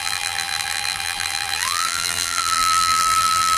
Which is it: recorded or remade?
remade